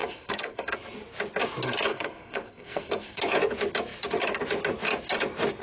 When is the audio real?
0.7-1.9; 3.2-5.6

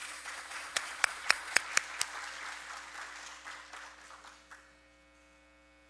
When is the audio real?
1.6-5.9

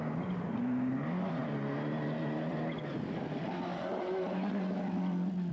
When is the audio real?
0.0-3.7; 4.5-5.5

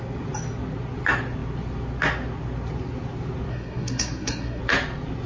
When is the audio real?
0.0-3.5; 4.6-5.3